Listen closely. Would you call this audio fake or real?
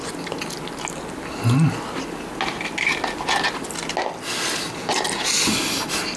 real